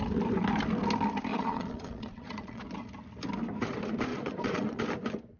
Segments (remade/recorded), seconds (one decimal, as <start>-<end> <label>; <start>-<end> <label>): 0.0-1.3 recorded; 1.3-2.6 remade; 2.6-4.1 recorded; 4.1-4.8 remade; 4.8-5.4 recorded

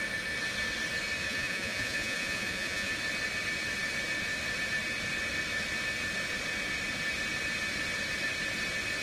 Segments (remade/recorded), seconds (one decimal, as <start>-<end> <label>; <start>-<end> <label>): 0.0-1.2 recorded; 1.2-2.9 remade; 2.9-9.0 recorded

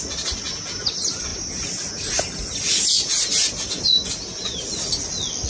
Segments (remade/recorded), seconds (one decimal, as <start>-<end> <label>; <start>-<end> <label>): 0.0-5.5 recorded

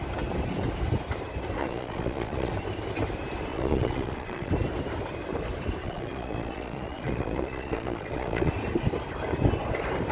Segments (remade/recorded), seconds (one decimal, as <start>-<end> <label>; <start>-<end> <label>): 0.0-1.6 recorded; 1.6-2.5 remade; 2.5-3.5 recorded; 3.5-4.5 remade; 4.5-5.8 recorded; 5.8-8.5 remade; 8.5-10.1 recorded